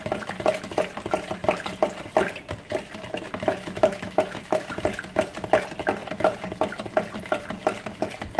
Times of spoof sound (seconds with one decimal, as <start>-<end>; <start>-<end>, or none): 3.5-4.7